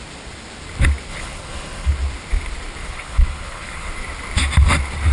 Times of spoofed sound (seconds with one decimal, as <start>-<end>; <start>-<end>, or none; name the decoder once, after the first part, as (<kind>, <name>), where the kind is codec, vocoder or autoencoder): 1.1-1.9 (codec, HILCodec); 2.8-3.9